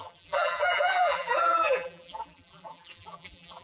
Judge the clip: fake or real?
fake